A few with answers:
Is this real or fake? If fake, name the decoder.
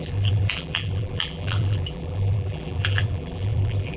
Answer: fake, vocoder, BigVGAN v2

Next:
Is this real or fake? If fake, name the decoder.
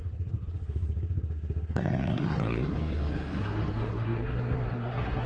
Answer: fake, codec, SNAC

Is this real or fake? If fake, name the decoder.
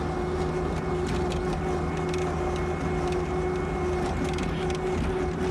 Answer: real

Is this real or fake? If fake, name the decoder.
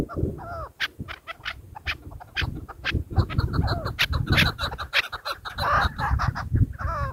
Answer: real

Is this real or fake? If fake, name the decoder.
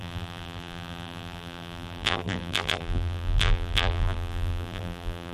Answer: fake, vocoder, BigVGAN v2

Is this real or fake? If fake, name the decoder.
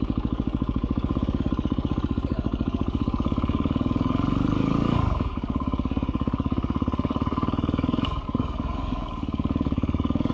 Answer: fake, codec, DAC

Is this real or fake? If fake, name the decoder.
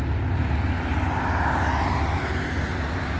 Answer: real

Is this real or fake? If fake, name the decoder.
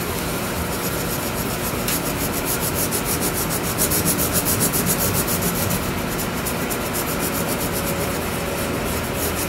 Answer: real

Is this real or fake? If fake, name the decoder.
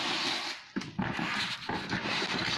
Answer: real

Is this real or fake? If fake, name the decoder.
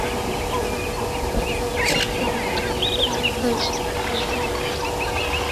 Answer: real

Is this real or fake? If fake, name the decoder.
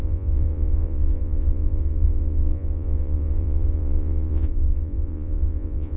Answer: fake, vocoder, Vocos